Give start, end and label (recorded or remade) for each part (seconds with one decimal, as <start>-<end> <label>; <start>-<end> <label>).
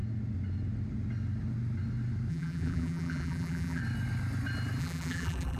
0.0-2.3 recorded; 2.3-3.8 remade; 3.8-4.8 recorded; 4.8-5.6 remade